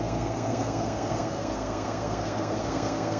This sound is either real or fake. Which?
fake